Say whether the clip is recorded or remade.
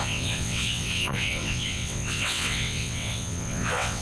remade